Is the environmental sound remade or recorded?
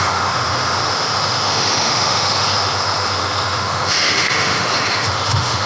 remade